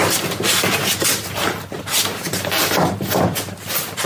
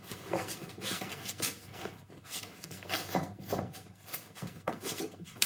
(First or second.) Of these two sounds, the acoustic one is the first